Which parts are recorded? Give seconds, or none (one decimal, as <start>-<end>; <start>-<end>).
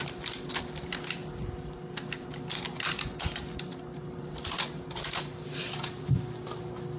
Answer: 0.0-7.0